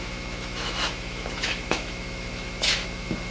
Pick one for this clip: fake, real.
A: fake